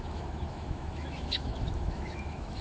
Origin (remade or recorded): remade